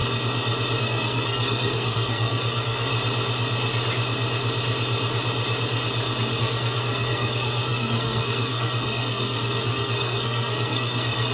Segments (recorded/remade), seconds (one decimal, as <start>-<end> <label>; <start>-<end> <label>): 0.0-0.8 recorded; 0.8-2.9 remade; 2.9-6.4 recorded; 6.4-11.3 remade